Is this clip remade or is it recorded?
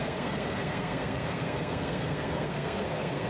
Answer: remade